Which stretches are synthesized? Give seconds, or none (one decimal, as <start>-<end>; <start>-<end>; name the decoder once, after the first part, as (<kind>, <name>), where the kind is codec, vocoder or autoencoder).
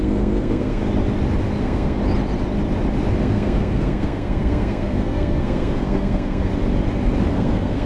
0.0-0.8 (codec, SNAC); 1.6-2.0; 3.2-6.5; 7.3-7.9